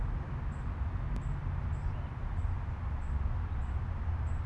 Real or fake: real